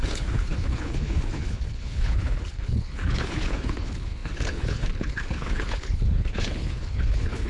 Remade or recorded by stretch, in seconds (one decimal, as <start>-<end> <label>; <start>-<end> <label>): 0.0-7.5 remade